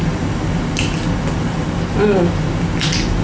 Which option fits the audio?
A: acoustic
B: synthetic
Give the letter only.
A